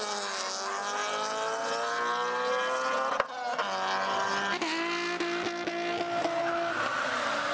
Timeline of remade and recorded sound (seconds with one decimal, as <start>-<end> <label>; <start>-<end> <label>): 0.0-7.5 recorded